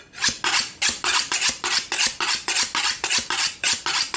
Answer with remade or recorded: recorded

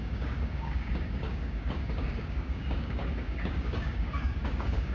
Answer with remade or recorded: remade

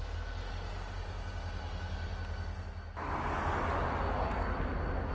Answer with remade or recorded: recorded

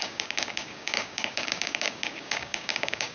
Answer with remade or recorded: remade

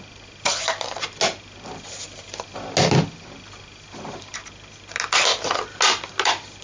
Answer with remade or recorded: recorded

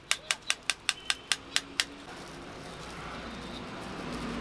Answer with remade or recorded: recorded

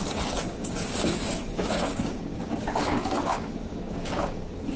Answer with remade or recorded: remade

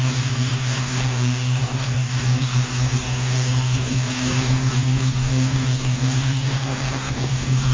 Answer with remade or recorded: remade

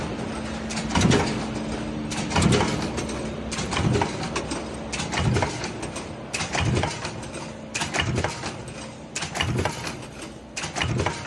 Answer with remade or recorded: recorded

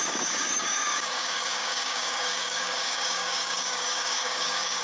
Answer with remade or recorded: remade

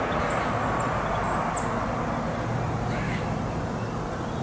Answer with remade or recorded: recorded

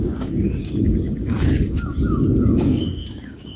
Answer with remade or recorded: remade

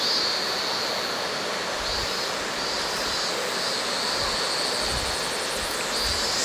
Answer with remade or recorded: recorded